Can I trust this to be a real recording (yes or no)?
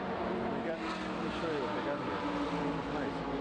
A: yes